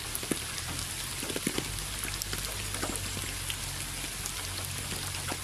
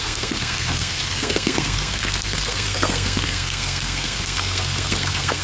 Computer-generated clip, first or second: second